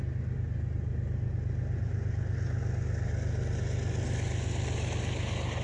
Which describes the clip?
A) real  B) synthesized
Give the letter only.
A